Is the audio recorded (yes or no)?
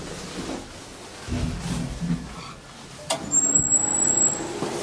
yes